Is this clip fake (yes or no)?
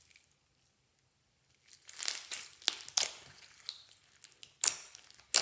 no